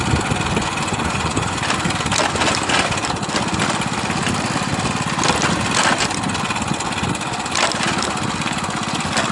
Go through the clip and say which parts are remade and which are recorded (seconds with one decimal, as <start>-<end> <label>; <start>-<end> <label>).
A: 0.0-0.6 recorded; 0.6-1.6 remade; 1.6-9.3 recorded